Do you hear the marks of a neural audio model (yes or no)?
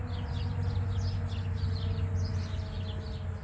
no